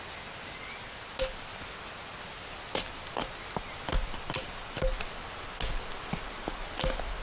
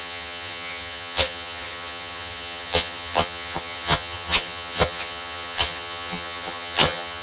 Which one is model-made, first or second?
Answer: second